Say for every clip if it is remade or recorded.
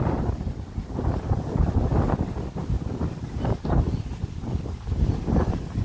recorded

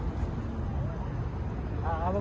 recorded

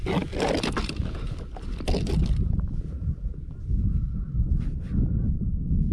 recorded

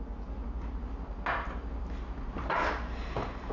recorded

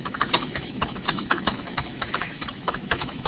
remade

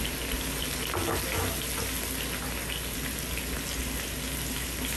recorded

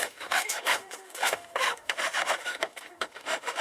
remade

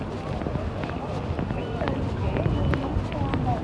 recorded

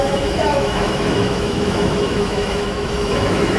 remade